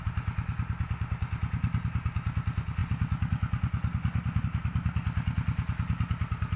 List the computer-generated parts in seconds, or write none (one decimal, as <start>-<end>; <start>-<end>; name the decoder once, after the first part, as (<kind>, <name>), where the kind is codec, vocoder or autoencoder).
none